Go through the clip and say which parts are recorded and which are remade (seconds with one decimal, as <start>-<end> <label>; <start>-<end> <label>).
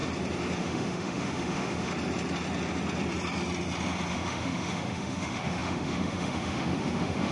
0.0-0.6 recorded; 0.6-1.9 remade; 1.9-4.1 recorded; 4.1-7.3 remade